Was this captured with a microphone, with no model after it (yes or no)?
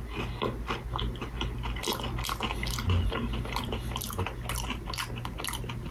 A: yes